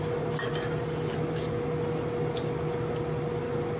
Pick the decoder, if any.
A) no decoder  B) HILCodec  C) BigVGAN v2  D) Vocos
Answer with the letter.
A